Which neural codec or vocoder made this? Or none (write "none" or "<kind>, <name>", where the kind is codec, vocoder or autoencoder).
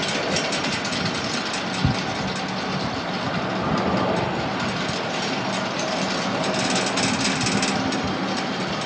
none